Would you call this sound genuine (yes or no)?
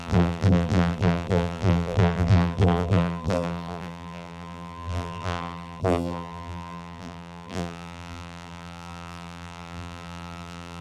no